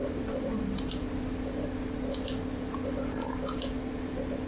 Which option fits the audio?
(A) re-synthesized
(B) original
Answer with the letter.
B